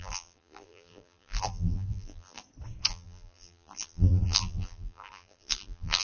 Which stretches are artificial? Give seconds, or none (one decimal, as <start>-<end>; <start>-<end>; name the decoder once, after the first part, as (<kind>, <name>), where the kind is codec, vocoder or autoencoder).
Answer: 0.0-2.4 (vocoder, BigVGAN v2); 2.9-6.0

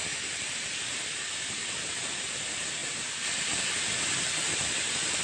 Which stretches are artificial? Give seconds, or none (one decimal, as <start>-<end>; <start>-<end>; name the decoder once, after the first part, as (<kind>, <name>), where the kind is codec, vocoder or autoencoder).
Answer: 2.8-5.2 (vocoder, BigVGAN v2)